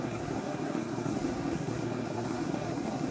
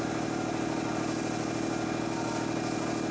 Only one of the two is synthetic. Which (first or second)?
first